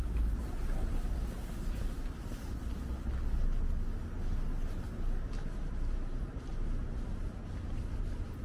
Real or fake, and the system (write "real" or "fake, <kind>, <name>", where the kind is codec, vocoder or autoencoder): real